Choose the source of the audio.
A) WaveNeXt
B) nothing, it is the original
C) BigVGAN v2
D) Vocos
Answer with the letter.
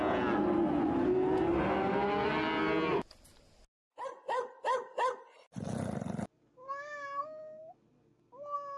B